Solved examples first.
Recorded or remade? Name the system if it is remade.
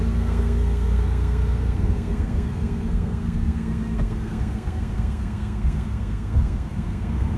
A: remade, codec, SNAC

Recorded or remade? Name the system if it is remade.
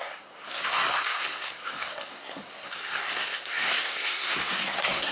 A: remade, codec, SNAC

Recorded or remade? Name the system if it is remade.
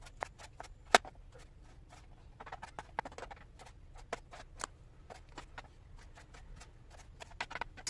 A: recorded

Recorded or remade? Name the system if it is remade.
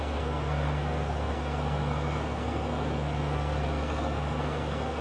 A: remade, codec, SNAC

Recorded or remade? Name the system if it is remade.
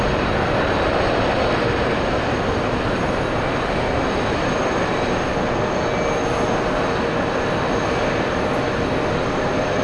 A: recorded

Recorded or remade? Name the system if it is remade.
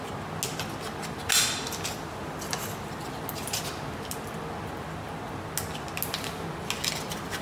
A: recorded